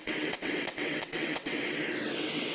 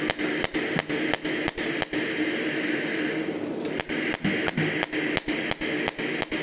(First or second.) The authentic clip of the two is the second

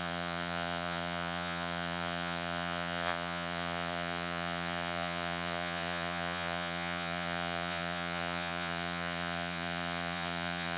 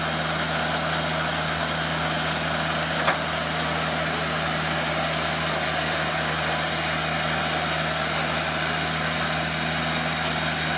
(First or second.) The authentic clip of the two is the second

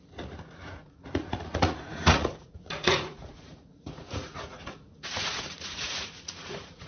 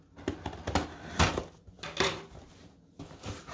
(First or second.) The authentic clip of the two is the second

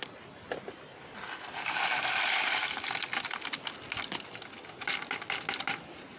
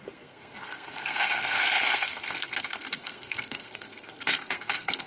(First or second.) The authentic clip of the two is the first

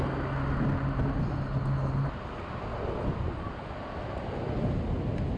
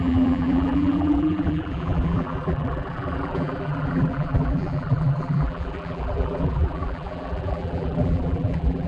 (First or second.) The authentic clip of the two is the first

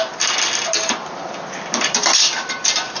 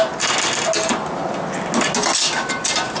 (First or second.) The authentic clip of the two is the second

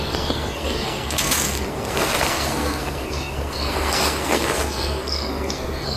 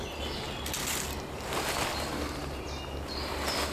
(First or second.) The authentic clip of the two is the second